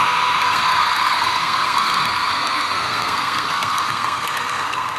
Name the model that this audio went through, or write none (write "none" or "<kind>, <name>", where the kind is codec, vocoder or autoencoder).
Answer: codec, SNAC